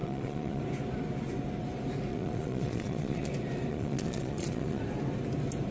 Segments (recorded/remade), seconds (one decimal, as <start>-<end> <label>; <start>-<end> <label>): 0.0-0.6 remade; 0.6-2.1 recorded; 2.1-3.3 remade; 3.3-3.7 recorded; 3.7-4.8 remade; 4.8-5.7 recorded